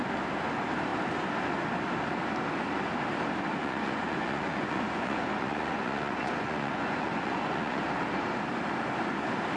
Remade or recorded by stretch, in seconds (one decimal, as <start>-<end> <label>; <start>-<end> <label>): 0.0-3.6 recorded; 3.6-7.8 remade; 7.8-9.6 recorded

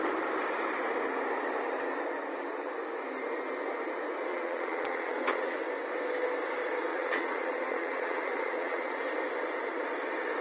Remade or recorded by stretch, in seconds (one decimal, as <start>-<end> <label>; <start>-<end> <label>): 0.0-4.3 recorded; 4.3-5.6 remade; 5.6-6.9 recorded; 6.9-9.0 remade; 9.0-10.4 recorded

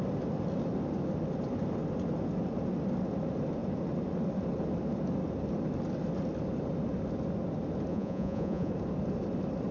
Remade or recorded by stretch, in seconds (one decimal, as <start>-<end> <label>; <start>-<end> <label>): 0.0-7.9 recorded; 7.9-8.7 remade; 8.7-9.7 recorded

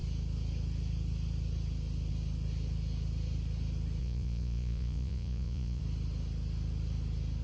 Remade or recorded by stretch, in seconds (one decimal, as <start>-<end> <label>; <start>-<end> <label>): 0.0-4.0 recorded; 4.0-5.8 remade; 5.8-7.4 recorded

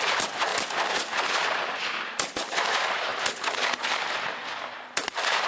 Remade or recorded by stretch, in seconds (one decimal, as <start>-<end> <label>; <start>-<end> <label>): 0.0-5.5 recorded

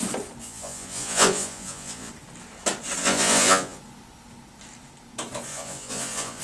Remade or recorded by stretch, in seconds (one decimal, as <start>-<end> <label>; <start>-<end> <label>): 0.0-0.4 recorded; 0.4-2.1 remade; 2.1-3.0 recorded; 3.0-3.8 remade; 3.8-5.5 recorded; 5.5-6.4 remade